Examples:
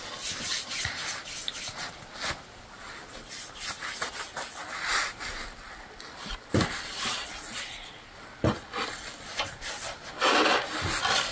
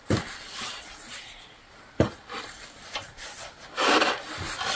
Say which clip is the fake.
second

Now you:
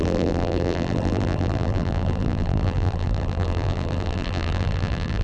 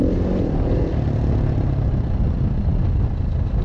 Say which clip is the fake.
first